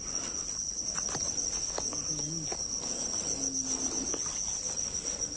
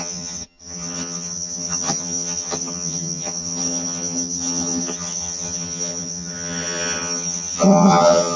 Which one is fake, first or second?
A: second